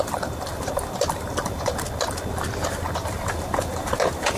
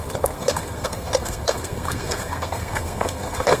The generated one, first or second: second